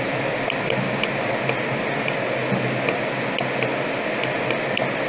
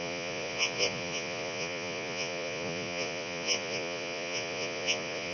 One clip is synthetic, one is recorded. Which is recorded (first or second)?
first